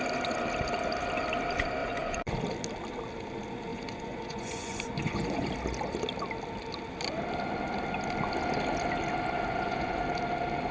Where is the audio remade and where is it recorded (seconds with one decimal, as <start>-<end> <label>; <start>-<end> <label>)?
0.0-1.8 recorded; 1.8-2.3 remade; 2.3-3.7 recorded; 3.7-5.5 remade; 5.5-9.5 recorded; 9.5-10.0 remade; 10.0-10.7 recorded